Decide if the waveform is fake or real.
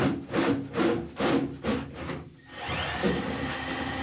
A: real